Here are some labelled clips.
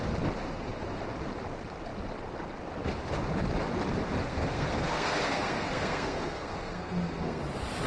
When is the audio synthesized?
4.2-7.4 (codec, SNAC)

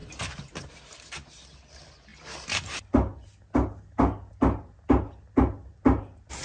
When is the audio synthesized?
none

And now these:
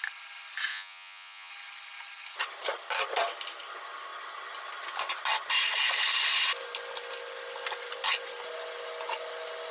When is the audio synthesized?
0.7-1.5 (vocoder, Vocos)

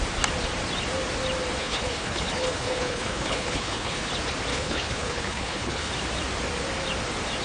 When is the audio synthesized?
1.6-4.1 (codec, HILCodec); 4.5-5.9

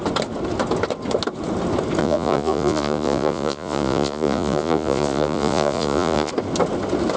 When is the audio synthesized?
2.0-6.3 (vocoder, Vocos)

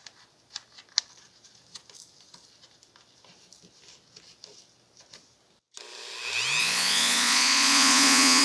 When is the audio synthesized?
6.6-8.4 (vocoder, Vocos)

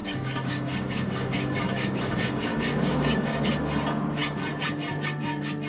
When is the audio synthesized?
0.0-3.4 (codec, DAC)

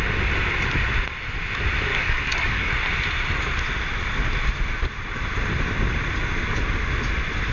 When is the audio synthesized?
1.9-2.7 (codec, DAC)